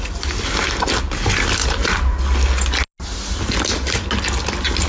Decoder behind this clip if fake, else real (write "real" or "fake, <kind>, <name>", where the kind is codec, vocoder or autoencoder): real